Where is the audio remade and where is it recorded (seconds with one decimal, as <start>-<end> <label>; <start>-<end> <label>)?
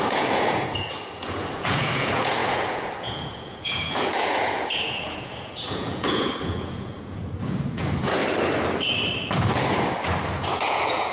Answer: 0.0-8.2 remade; 8.2-10.3 recorded; 10.3-11.1 remade